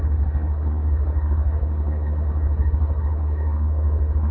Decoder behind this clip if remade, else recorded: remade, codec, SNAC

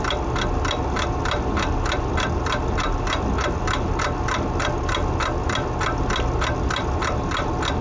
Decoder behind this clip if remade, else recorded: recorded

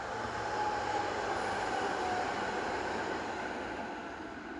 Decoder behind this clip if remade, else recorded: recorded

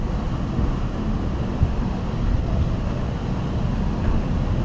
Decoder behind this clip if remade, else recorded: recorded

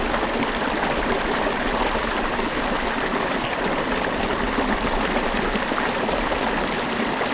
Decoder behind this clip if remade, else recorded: recorded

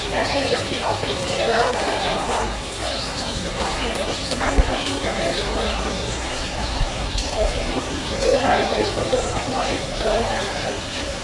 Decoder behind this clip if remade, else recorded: remade, codec, SNAC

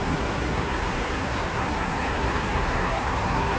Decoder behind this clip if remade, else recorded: remade, codec, SNAC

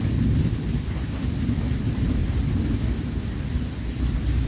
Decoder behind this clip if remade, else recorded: recorded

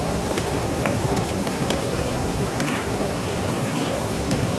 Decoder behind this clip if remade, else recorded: remade, codec, SNAC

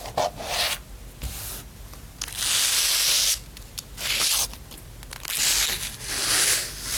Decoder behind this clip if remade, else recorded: recorded